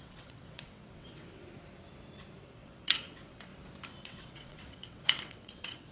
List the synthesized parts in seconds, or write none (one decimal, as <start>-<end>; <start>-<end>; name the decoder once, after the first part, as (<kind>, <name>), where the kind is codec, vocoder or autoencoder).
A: 0.0-1.4 (vocoder, WaveNeXt); 2.4-3.5; 4.0-5.9

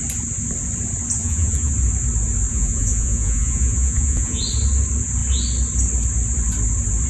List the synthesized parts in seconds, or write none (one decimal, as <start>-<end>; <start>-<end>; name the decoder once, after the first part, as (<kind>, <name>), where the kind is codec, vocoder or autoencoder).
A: 1.2-1.7 (vocoder, Vocos); 2.5-4.4